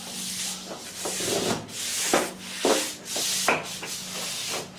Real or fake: real